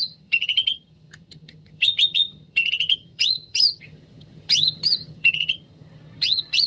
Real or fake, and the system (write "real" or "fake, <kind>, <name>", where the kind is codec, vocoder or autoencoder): fake, vocoder, HiFi-GAN